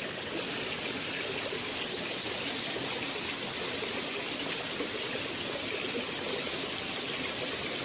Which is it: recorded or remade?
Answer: recorded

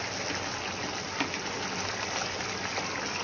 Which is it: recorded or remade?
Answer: recorded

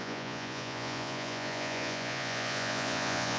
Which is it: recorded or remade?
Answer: remade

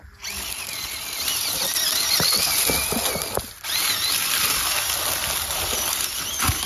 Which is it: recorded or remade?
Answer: recorded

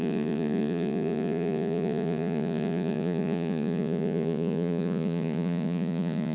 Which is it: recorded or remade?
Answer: remade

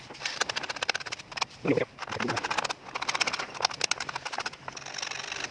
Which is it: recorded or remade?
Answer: recorded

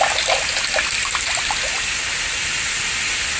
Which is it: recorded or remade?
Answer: recorded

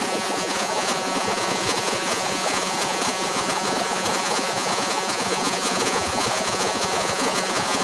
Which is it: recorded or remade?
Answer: remade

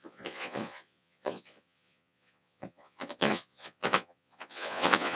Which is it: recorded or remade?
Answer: remade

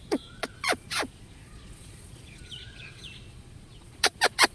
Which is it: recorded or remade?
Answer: remade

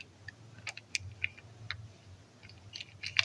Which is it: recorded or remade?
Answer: recorded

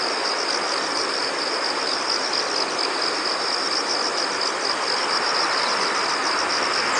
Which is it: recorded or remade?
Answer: recorded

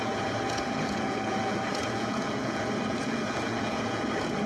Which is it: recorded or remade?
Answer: remade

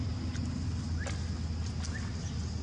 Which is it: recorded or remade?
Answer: recorded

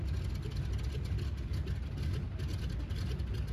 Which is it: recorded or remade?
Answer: recorded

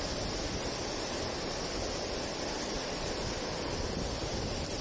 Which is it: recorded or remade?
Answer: recorded